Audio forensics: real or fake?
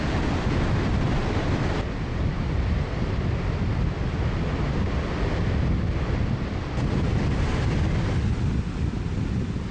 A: real